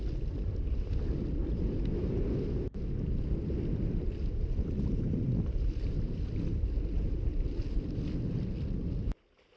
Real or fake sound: real